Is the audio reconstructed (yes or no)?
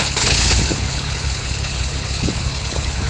yes